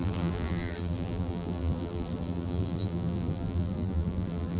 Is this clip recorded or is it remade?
remade